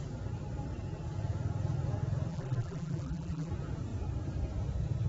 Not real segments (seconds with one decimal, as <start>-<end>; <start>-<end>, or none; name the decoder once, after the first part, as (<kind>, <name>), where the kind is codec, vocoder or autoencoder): 2.3-3.5 (vocoder, BigVGAN v2)